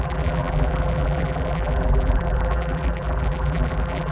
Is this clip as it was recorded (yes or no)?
no